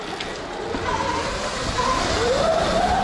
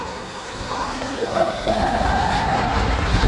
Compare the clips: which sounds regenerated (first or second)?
second